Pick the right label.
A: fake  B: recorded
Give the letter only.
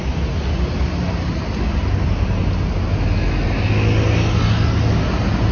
B